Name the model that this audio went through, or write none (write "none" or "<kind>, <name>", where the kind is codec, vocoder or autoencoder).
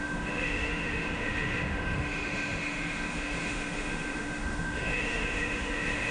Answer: autoencoder, DAC-VAE